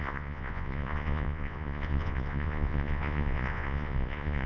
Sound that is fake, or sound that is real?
fake